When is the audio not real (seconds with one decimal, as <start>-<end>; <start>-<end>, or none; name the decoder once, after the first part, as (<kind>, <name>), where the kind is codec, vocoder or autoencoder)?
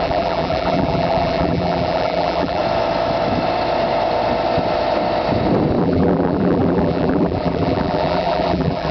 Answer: 0.0-2.6 (vocoder, BigVGAN v2); 5.8-8.9